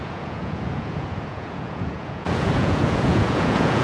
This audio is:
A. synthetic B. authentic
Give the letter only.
A